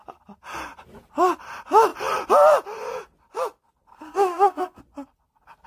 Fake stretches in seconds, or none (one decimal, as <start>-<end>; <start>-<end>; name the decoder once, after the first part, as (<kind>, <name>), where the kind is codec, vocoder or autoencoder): 3.9-4.8 (codec, SNAC)